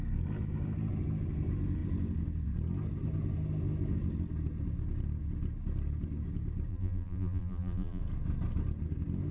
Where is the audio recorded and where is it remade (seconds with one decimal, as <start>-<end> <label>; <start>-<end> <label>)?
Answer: 0.0-6.7 recorded; 6.7-8.0 remade; 8.0-9.3 recorded